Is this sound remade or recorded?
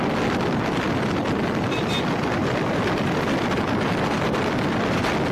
recorded